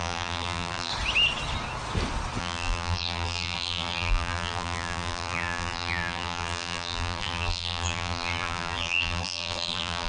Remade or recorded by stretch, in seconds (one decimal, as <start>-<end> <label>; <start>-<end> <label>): 0.0-0.9 remade; 0.9-2.4 recorded; 2.4-10.1 remade